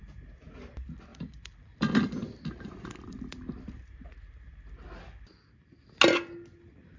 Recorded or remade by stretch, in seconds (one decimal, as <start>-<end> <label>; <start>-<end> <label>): 0.0-1.1 recorded; 1.1-3.8 remade; 3.8-7.0 recorded